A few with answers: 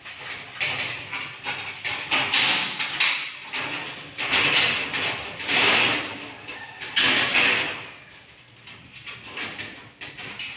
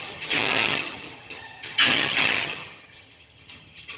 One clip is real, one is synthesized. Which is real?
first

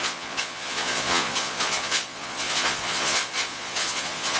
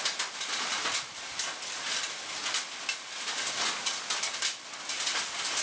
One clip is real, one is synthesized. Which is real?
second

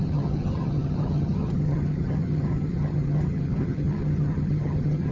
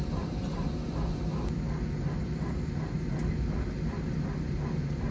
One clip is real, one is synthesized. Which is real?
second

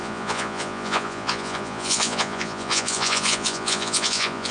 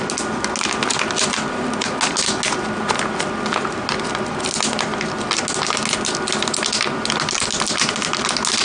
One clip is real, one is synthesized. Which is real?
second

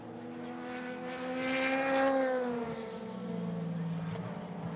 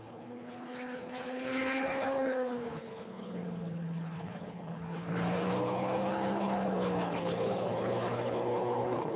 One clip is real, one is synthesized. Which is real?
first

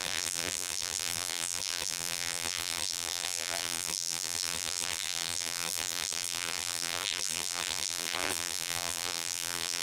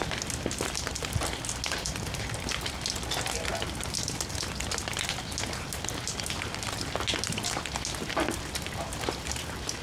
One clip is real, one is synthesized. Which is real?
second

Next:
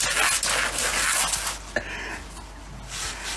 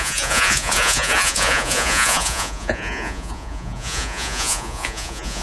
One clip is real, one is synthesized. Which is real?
first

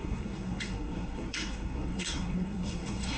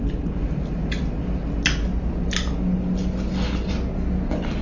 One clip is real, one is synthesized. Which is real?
second